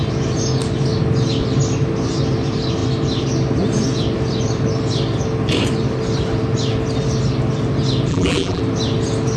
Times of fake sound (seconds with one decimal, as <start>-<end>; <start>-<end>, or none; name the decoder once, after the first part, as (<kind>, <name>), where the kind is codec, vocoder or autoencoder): 8.1-8.6 (vocoder, BigVGAN v2)